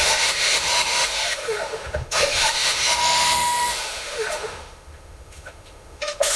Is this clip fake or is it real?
fake